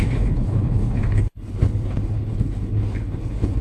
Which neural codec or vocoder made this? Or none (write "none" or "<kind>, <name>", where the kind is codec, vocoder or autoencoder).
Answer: codec, HILCodec